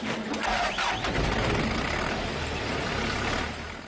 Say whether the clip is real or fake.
real